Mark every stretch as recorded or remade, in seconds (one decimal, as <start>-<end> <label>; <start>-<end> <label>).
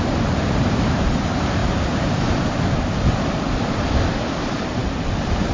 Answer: 0.0-1.6 remade; 1.6-4.3 recorded; 4.3-5.5 remade